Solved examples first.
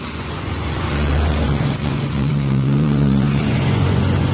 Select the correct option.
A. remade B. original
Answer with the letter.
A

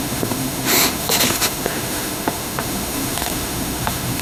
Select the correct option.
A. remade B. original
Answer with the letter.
A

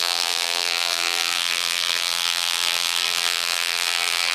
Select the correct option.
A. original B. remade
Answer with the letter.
B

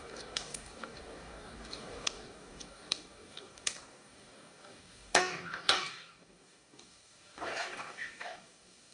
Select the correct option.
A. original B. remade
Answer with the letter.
B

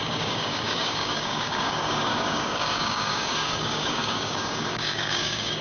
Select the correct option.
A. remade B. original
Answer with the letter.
A